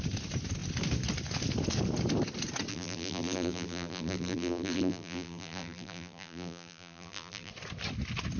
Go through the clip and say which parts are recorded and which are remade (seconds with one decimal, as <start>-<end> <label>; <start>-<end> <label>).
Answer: 0.0-2.7 recorded; 2.7-7.5 remade; 7.5-8.4 recorded